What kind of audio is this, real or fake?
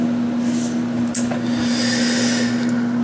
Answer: real